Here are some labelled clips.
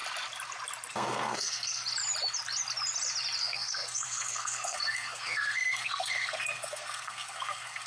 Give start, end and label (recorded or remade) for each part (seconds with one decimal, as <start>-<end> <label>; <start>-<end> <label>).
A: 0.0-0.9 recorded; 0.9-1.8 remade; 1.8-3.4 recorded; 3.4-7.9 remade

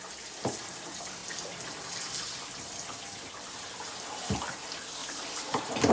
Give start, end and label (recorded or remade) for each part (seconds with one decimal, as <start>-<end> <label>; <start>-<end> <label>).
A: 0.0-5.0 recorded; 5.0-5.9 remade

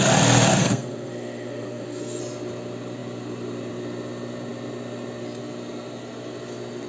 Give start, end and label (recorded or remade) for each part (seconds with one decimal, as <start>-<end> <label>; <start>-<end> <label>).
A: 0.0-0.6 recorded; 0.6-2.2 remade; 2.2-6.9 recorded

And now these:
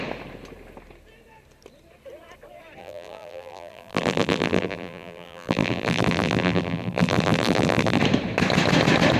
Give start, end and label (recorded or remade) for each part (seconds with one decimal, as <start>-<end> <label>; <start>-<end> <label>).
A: 0.0-2.8 recorded; 2.8-8.0 remade; 8.0-9.2 recorded